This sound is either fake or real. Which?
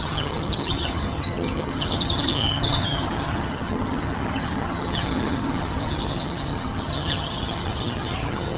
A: fake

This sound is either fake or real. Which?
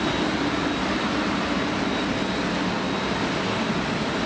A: real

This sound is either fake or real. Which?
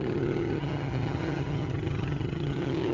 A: fake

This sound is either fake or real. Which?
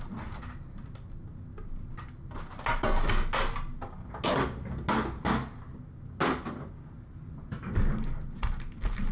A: real